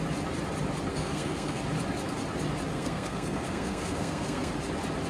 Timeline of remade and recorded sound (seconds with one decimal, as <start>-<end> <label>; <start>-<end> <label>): 0.0-0.9 recorded; 0.9-1.6 remade; 1.6-2.7 recorded; 2.7-4.5 remade; 4.5-5.1 recorded